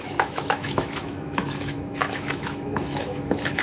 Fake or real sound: fake